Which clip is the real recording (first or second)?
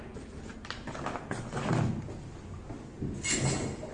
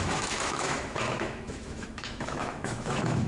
first